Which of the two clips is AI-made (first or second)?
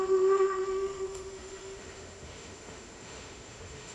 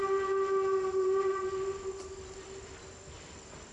first